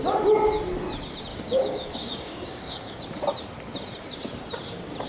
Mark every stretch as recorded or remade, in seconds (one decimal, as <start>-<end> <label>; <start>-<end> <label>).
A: 0.0-1.3 recorded; 1.3-3.0 remade; 3.0-5.1 recorded